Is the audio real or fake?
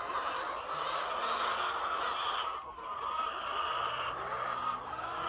real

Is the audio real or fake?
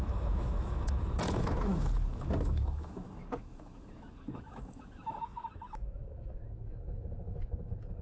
fake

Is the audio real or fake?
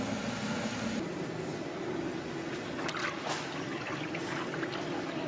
real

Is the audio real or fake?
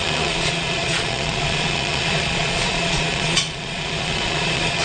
fake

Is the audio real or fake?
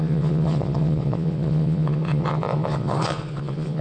fake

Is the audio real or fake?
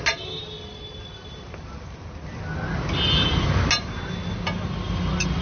real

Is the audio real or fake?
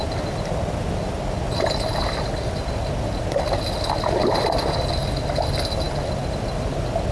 real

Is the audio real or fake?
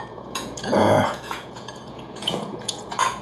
fake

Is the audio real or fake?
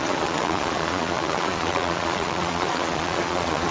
fake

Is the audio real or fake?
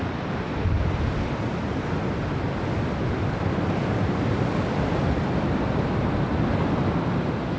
real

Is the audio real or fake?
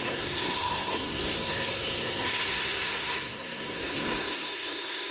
fake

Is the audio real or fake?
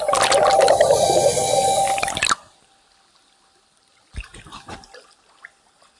real